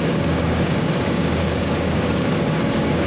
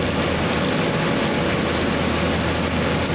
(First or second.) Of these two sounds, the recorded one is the second